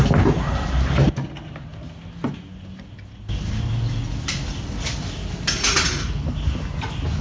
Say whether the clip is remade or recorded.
recorded